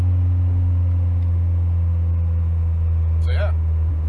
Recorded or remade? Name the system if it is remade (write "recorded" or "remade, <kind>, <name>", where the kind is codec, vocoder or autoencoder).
recorded